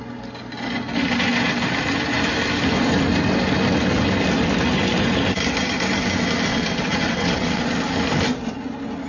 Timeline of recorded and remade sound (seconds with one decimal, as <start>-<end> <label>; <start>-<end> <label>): 0.0-6.5 recorded; 6.5-7.6 remade; 7.6-9.1 recorded